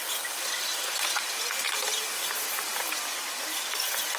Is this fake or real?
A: real